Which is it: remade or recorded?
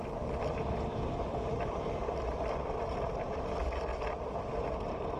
recorded